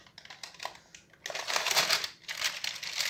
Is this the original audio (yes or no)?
yes